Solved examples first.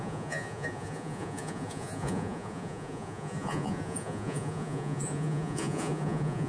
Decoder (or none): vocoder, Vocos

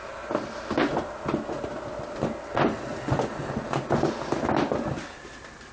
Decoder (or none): none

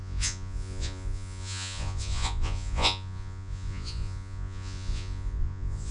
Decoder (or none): vocoder, Vocos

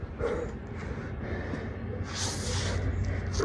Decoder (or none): none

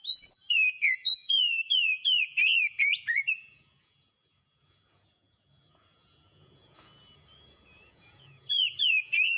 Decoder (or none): vocoder, Vocos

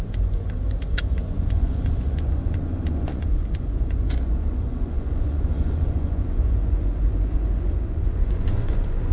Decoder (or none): vocoder, Vocos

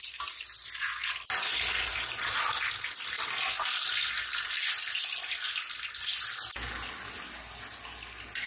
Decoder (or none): none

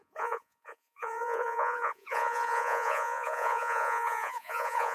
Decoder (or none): vocoder, Vocos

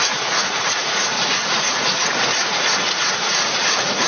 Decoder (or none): vocoder, Vocos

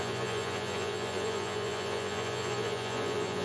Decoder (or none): vocoder, Vocos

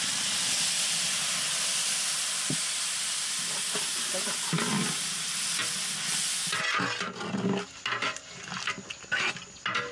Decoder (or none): none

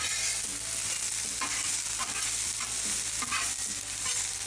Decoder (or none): none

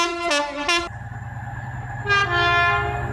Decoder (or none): none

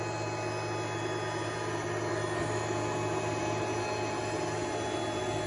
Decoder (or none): none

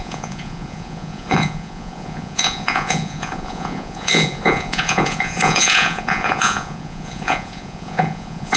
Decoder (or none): vocoder, Vocos